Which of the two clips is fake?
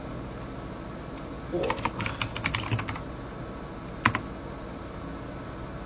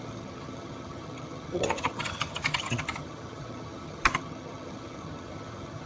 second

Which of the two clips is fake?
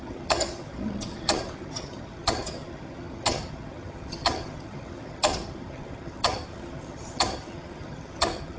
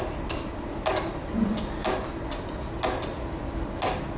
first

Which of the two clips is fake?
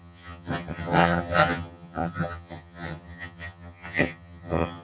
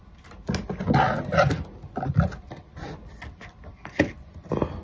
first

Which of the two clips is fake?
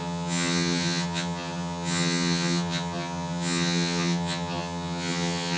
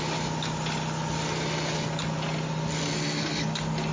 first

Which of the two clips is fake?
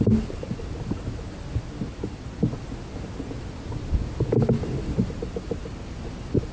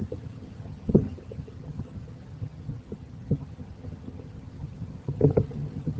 second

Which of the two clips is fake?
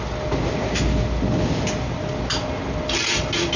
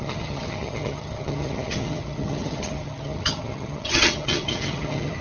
second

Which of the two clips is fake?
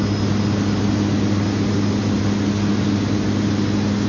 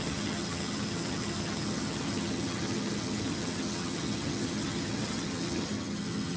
second